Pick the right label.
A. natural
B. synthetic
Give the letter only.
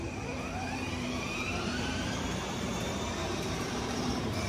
B